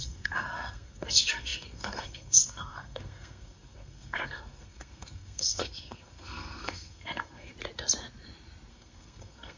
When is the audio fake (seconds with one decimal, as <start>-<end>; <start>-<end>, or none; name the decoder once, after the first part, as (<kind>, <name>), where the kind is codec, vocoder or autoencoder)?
0.0-7.5 (codec, SNAC); 8.7-9.6